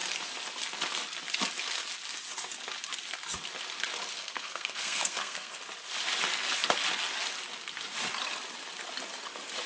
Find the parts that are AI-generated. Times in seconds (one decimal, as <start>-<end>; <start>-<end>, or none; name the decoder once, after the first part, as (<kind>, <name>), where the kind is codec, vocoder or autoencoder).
4.1-5.6 (codec, SNAC)

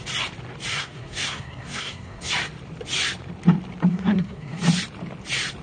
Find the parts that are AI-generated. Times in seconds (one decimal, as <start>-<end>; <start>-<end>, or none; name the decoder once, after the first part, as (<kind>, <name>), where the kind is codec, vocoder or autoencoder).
0.7-2.3 (codec, SNAC); 3.9-4.6

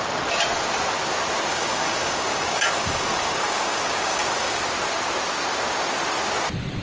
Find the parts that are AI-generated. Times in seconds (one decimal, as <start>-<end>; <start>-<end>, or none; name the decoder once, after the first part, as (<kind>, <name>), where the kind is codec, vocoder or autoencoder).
1.5-4.6 (codec, DAC)

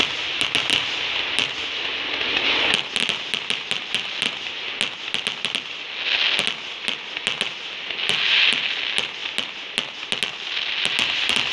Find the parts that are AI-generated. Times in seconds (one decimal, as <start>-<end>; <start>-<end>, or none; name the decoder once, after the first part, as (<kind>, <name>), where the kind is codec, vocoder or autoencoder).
none

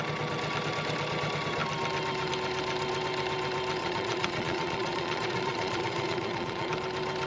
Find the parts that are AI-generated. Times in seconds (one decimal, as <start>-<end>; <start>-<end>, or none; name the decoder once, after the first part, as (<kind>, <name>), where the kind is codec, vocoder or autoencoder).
3.8-6.7 (vocoder, Vocos)

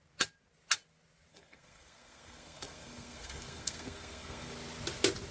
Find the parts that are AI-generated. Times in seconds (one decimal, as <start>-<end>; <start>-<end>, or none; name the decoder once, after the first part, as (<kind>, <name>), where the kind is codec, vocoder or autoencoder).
1.3-4.5 (codec, SNAC)